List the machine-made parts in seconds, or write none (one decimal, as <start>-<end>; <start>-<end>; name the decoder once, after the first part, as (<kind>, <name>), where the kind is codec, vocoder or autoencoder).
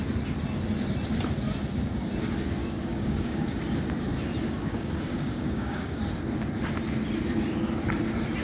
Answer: 2.6-3.6 (codec, DAC); 4.6-6.0